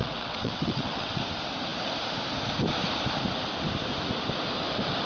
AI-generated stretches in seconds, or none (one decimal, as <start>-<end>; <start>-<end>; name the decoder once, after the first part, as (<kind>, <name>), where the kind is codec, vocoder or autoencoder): 0.0-1.2 (vocoder, WaveNeXt)